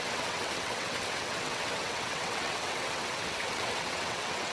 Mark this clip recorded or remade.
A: remade